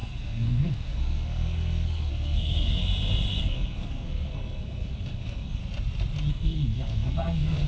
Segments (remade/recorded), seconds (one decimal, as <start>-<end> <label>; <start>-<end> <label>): 0.0-2.8 remade; 2.8-3.4 recorded; 3.4-5.6 remade; 5.6-6.3 recorded; 6.3-7.7 remade